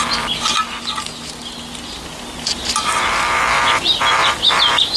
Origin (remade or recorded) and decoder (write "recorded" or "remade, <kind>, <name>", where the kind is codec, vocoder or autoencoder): recorded